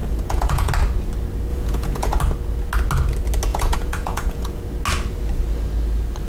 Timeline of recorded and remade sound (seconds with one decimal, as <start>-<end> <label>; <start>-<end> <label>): 0.0-0.7 remade; 0.7-1.5 recorded; 1.5-2.2 remade; 2.2-3.5 recorded; 3.5-4.6 remade; 4.6-6.3 recorded